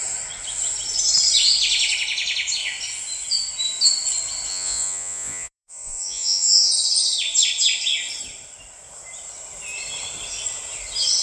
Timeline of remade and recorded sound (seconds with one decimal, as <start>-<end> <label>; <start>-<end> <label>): 0.0-4.5 recorded; 4.5-6.7 remade; 6.7-11.2 recorded